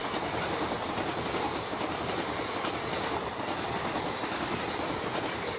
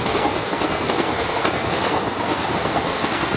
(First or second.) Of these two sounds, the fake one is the second